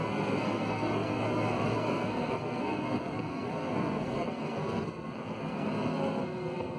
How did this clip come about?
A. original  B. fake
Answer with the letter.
B